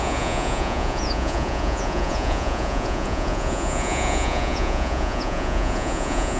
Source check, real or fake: fake